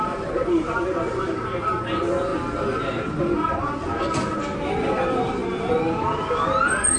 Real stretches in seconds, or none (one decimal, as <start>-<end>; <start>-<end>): 0.0-7.0

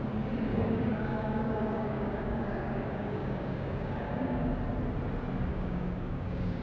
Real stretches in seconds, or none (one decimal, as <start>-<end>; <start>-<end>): 0.0-0.5; 4.5-5.5

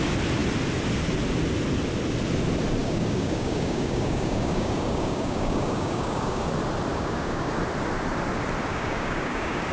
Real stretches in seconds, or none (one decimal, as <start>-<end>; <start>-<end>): 0.0-2.8; 6.5-6.9; 7.5-8.7

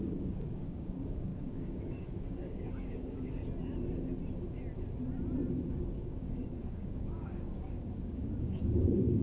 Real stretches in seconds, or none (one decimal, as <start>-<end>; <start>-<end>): 3.4-5.7